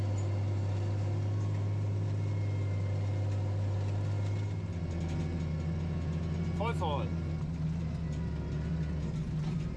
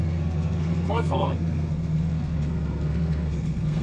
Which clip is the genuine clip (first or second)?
first